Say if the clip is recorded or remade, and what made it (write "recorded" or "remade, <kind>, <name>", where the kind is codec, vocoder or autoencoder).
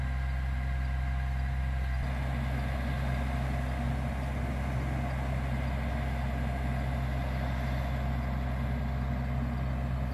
recorded